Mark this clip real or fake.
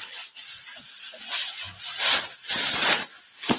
real